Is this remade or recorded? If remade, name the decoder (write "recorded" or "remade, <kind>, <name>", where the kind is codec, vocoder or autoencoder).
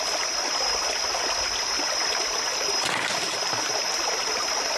recorded